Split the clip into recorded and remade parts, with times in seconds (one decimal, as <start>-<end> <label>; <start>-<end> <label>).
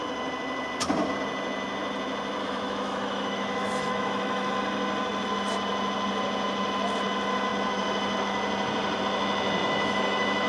0.0-2.4 recorded; 2.4-4.5 remade; 4.5-9.6 recorded; 9.6-10.5 remade